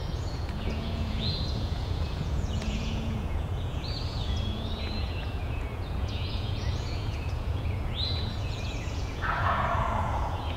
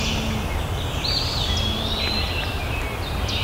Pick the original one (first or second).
second